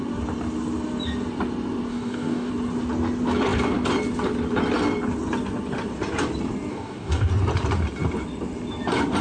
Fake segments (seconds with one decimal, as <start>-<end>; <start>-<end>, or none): 1.9-2.5; 6.7-7.3